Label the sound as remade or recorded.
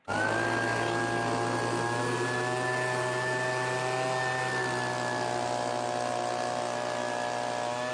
recorded